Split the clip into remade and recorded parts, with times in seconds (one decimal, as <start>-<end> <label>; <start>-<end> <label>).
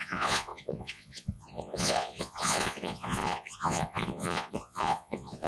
0.0-5.5 remade